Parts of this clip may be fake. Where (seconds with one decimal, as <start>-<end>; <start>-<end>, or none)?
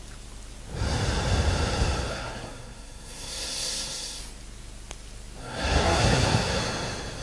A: 2.1-4.2; 5.4-6.6